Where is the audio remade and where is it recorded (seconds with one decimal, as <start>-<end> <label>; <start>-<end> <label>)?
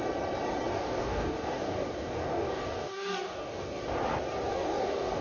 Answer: 0.0-0.7 recorded; 0.7-3.8 remade; 3.8-4.5 recorded; 4.5-5.2 remade